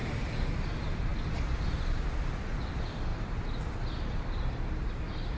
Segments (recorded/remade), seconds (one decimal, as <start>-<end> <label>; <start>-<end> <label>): 0.0-5.4 recorded